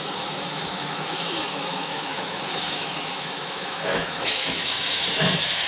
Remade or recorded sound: remade